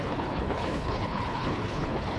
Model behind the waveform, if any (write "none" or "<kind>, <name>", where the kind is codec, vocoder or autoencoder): codec, HILCodec